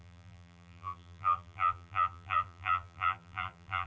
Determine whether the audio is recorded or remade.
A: remade